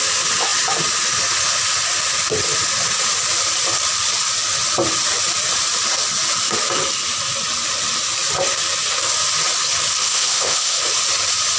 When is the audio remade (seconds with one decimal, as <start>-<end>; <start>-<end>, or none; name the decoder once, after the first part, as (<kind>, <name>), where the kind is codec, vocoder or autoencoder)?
10.0-10.8 (codec, ZipCodec)